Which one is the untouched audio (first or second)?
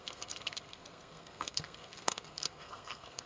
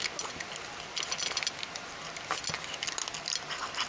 second